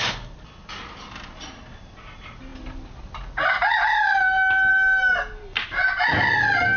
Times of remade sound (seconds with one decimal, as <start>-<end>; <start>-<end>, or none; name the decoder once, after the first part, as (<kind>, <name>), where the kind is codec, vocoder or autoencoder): none

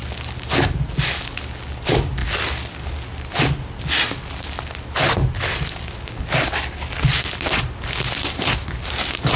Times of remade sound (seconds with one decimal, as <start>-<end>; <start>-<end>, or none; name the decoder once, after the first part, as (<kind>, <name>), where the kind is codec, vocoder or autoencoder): none

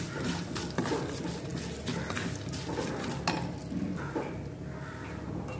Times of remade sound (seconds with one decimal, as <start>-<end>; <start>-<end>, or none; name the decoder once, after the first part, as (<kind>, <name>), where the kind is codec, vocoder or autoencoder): none

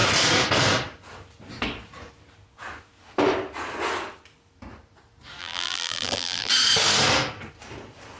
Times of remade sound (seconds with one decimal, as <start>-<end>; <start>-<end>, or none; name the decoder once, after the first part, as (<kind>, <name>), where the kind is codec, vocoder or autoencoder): 5.4-6.5 (vocoder, BigVGAN v2)

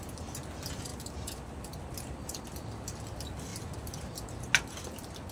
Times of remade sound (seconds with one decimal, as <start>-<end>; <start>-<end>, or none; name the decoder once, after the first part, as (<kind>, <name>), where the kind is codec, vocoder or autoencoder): 0.9-2.4 (vocoder, BigVGAN v2)

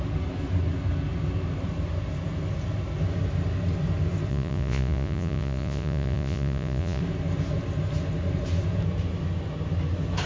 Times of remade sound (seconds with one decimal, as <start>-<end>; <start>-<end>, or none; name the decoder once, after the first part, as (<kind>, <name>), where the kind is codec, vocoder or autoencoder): 4.3-7.0 (vocoder, Vocos)